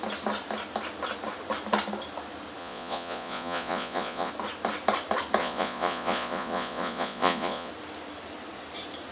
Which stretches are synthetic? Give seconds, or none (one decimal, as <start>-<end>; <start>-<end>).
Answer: 2.6-4.3; 5.4-7.7